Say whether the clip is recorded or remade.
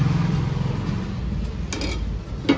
recorded